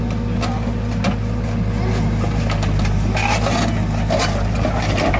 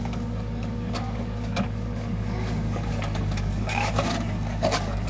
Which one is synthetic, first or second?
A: second